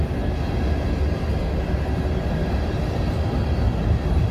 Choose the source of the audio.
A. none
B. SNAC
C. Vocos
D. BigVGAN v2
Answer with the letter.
A